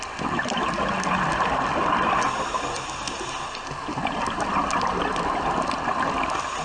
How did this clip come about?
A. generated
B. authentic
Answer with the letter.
B